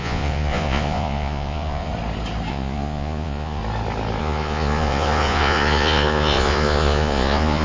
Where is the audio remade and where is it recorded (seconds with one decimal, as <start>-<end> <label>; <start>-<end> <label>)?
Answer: 0.0-1.9 remade; 1.9-2.5 recorded; 2.5-3.6 remade; 3.6-4.2 recorded; 4.2-7.6 remade